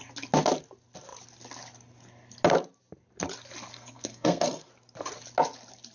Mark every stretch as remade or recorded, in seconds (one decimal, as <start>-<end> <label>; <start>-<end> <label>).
0.0-3.7 recorded; 3.7-4.7 remade; 4.7-5.9 recorded